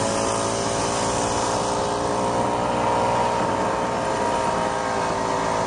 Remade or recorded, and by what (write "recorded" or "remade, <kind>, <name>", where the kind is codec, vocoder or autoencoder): recorded